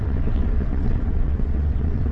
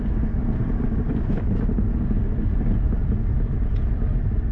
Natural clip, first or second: second